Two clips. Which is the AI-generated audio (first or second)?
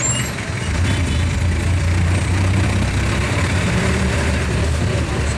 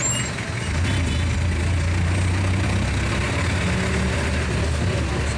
first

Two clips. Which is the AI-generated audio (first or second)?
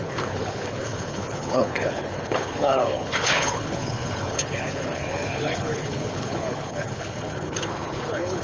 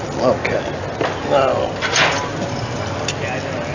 first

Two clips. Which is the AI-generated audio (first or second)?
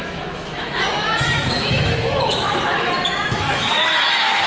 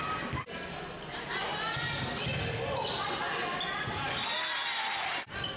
first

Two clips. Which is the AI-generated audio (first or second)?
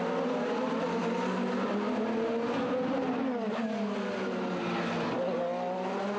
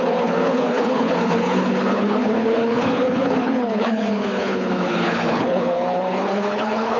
second